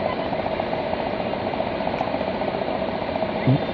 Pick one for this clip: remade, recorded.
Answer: recorded